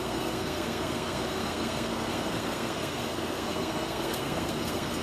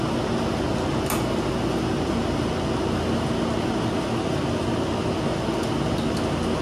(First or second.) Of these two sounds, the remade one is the first